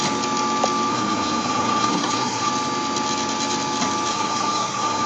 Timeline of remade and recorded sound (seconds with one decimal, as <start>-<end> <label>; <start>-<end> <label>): 0.0-0.9 recorded; 0.9-2.5 remade; 2.5-4.1 recorded; 4.1-5.1 remade